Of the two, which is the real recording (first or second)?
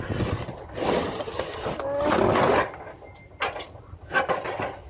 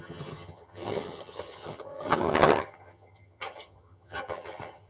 first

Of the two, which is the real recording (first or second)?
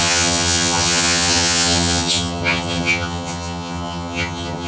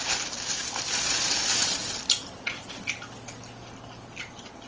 second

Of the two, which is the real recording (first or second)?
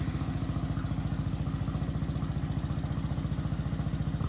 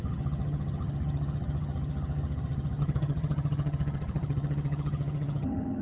first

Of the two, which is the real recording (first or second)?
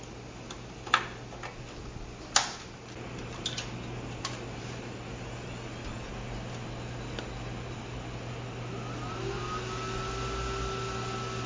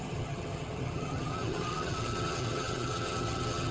first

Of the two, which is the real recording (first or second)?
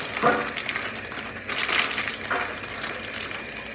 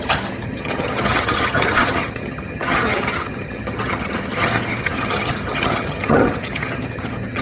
first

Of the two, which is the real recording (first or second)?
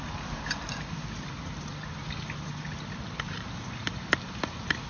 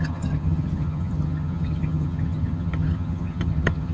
first